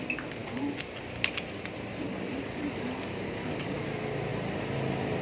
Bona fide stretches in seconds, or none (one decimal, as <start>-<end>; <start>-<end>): 0.0-5.2